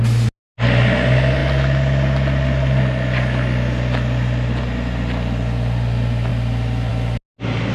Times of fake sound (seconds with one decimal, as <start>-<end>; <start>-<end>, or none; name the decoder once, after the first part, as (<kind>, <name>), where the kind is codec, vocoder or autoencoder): none